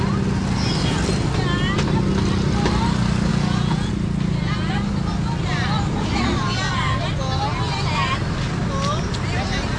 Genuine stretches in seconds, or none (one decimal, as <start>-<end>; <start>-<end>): 0.0-3.3; 3.9-9.8